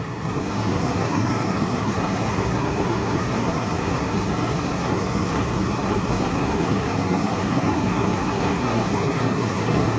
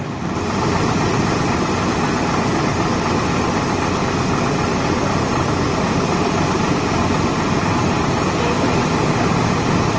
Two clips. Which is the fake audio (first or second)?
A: first